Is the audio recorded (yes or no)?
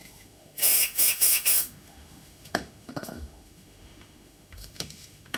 no